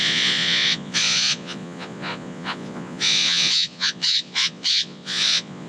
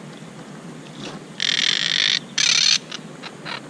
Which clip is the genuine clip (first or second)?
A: second